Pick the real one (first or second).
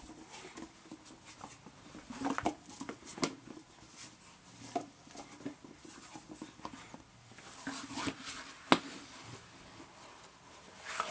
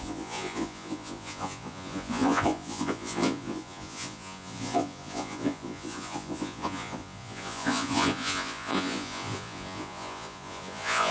first